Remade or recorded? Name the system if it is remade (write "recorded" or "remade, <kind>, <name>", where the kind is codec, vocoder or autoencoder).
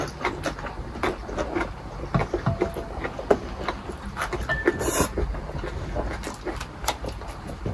recorded